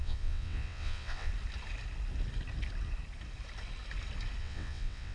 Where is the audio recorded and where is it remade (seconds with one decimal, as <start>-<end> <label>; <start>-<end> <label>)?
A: 0.0-1.3 remade; 1.3-4.4 recorded; 4.4-5.1 remade